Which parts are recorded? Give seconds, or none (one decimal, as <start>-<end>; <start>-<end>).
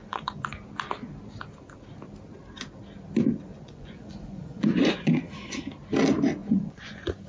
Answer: 0.6-3.5; 5.1-6.4